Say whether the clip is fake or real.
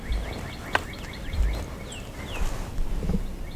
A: real